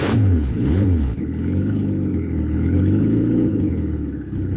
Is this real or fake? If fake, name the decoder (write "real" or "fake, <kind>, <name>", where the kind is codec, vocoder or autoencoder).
fake, codec, HILCodec